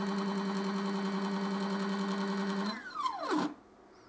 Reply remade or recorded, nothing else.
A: recorded